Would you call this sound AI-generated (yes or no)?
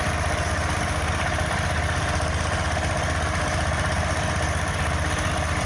no